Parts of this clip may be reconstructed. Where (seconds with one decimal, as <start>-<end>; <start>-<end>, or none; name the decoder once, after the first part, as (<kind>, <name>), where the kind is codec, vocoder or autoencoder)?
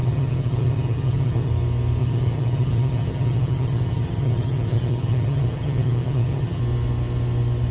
0.0-1.5 (vocoder, HiFi-GAN); 2.0-6.6